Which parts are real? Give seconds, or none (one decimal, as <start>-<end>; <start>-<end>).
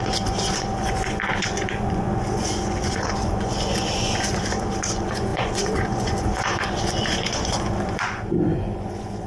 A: none